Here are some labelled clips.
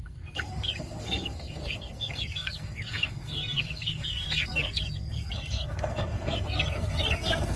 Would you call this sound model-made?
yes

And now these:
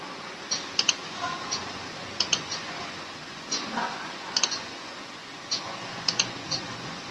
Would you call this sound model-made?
yes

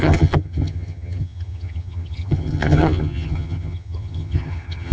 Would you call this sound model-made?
yes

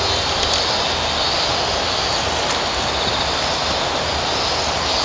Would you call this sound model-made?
no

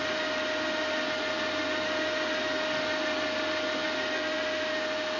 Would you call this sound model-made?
no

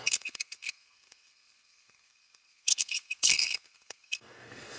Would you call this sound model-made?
yes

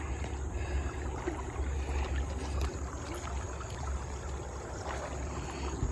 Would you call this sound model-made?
no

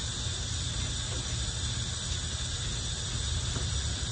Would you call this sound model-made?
no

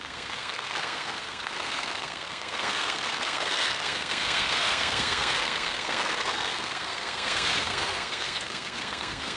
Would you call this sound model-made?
yes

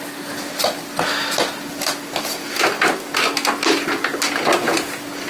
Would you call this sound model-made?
no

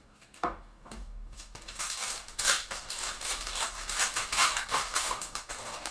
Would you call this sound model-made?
yes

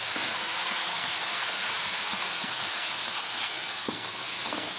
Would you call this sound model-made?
yes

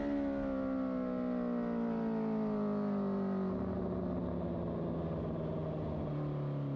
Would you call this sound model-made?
no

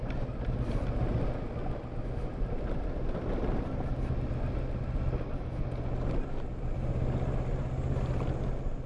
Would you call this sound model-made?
no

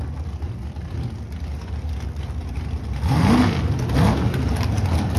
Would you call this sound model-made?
no